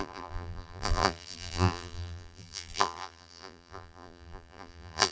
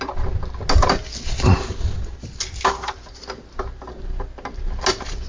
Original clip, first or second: second